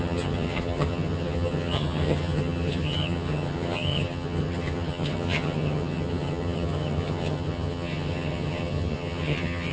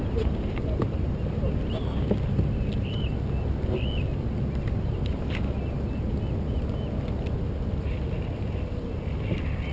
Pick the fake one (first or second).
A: first